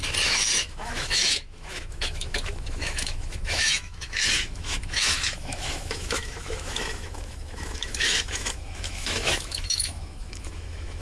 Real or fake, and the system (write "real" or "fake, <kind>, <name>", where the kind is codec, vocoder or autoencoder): fake, autoencoder, DAC-VAE